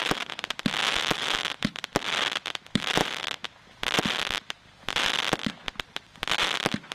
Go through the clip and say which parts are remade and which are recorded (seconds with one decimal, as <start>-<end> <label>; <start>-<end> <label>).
0.0-0.8 recorded; 0.8-1.5 remade; 1.5-6.9 recorded